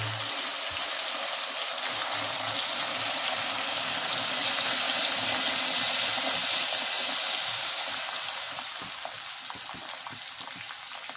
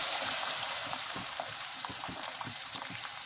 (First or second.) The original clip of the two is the first